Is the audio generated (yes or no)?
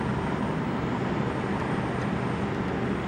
no